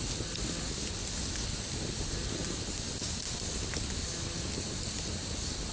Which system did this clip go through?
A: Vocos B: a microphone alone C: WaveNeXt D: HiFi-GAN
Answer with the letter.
B